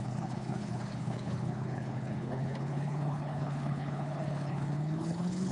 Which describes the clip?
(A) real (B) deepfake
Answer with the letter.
B